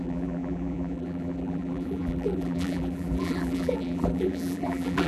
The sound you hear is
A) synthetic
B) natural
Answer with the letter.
A